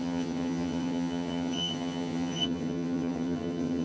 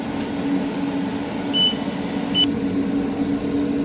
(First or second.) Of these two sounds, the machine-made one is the first